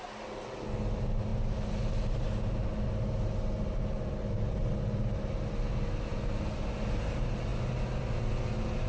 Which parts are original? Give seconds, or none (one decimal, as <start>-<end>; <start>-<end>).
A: 0.0-8.9